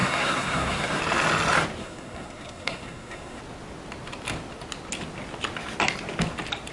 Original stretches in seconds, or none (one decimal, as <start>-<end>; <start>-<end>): 1.0-1.8; 3.4-6.7